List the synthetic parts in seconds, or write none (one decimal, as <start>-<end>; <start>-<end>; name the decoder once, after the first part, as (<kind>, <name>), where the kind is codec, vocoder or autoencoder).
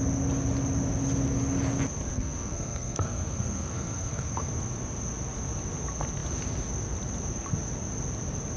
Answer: 2.1-4.5 (codec, SNAC)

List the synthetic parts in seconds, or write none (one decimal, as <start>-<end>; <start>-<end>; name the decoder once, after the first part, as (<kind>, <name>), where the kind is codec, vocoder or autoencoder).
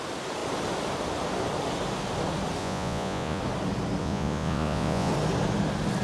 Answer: 2.6-3.4 (vocoder, Vocos); 4.0-5.1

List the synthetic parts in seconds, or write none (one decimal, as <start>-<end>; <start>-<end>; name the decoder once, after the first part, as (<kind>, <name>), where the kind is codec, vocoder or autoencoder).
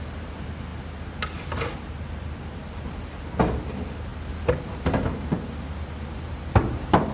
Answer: 4.1-6.4 (vocoder, BigVGAN v2)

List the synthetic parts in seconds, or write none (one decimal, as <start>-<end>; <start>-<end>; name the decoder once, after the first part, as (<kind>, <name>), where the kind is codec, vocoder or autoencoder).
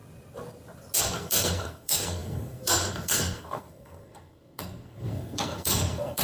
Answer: 1.0-6.2 (codec, SNAC)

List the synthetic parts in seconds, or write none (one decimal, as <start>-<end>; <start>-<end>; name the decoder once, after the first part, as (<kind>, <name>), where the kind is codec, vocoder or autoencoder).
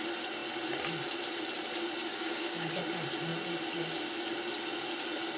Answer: 2.1-2.7 (codec, DAC)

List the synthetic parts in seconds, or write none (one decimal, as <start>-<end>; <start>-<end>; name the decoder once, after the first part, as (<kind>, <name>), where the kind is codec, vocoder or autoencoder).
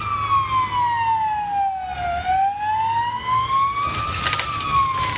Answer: none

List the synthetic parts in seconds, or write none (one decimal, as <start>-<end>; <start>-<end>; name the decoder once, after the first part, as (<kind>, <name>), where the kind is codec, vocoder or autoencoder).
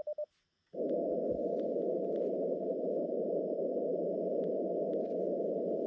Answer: none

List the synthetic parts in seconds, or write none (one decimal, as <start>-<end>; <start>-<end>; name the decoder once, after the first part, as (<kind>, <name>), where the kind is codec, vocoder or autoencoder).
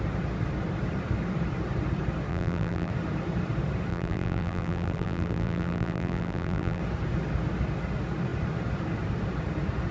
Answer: 2.3-2.9 (vocoder, BigVGAN v2); 3.9-6.8